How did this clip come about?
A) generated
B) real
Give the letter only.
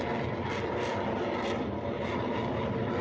B